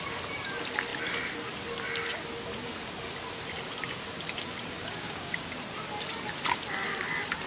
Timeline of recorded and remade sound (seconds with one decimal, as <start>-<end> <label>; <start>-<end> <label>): 0.0-4.8 recorded; 4.8-5.5 remade; 5.5-7.5 recorded